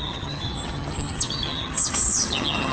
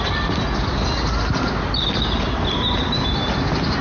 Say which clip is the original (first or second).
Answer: second